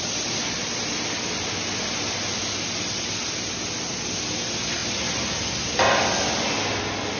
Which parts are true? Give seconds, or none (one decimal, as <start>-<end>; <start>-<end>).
0.0-7.2